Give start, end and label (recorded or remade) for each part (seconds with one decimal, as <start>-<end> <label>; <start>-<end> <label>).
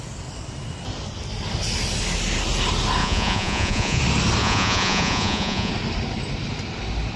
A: 0.0-3.0 recorded; 3.0-4.0 remade; 4.0-4.4 recorded; 4.4-5.7 remade; 5.7-7.2 recorded